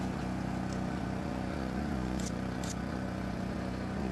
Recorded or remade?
remade